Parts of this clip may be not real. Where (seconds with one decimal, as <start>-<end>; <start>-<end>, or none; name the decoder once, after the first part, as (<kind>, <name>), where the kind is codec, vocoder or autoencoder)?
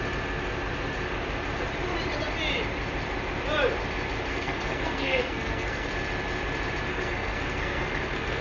4.3-5.9 (codec, SNAC); 6.9-8.4